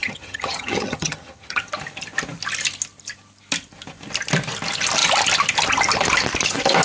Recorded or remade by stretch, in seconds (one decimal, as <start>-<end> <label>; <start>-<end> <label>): 0.0-1.6 remade; 1.6-6.8 recorded